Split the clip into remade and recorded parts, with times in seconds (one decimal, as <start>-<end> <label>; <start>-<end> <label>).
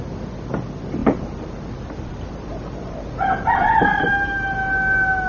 0.0-1.0 recorded; 1.0-4.1 remade; 4.1-5.3 recorded